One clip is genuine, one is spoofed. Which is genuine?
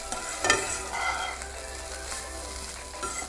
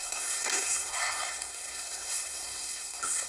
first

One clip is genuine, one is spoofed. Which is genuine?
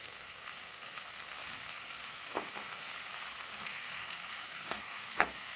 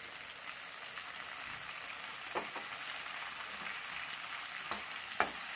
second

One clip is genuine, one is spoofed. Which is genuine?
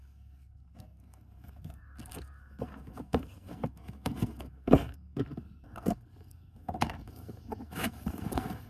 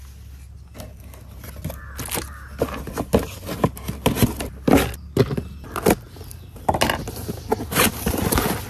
second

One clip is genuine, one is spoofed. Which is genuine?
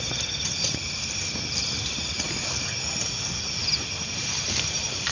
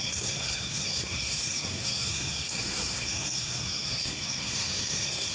first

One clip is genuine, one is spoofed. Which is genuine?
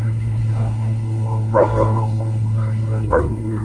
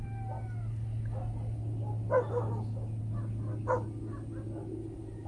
second